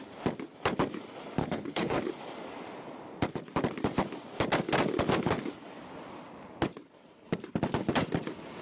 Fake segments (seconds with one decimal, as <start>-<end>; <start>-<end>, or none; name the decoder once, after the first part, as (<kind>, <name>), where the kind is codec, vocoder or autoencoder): 1.4-2.0 (codec, HILCodec)